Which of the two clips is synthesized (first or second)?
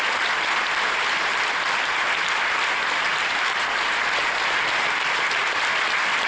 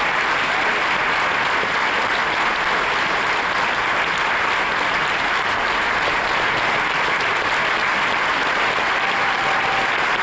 first